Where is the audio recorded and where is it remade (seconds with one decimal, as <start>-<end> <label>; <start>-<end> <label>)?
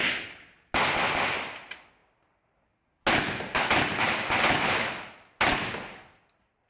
0.0-6.7 recorded